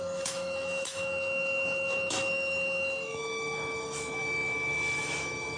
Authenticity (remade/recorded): remade